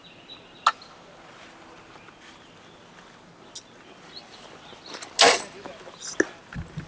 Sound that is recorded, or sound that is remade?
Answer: recorded